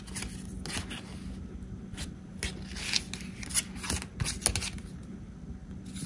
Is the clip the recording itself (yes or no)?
yes